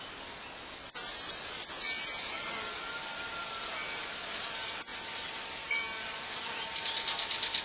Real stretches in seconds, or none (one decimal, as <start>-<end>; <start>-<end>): 0.0-7.6